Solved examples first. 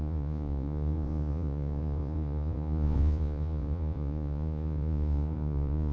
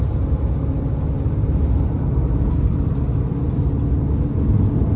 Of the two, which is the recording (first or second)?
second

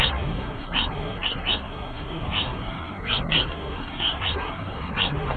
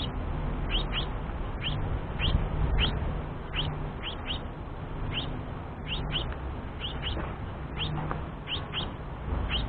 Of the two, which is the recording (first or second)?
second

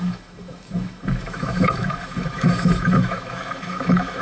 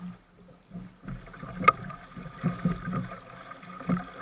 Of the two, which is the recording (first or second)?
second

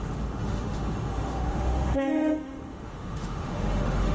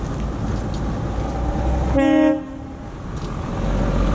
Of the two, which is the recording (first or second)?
second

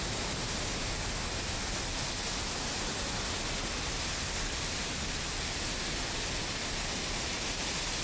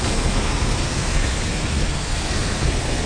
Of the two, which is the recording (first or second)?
first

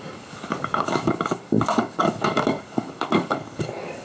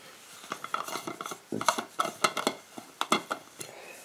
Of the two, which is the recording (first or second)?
second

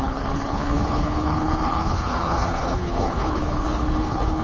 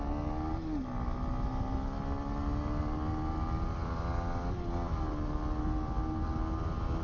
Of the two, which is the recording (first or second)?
second